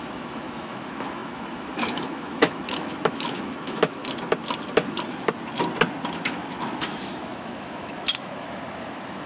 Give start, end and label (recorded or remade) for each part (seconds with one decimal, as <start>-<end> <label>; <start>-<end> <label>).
0.0-4.0 remade; 4.0-6.1 recorded; 6.1-9.3 remade